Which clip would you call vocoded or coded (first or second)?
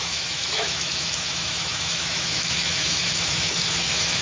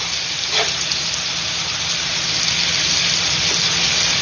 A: first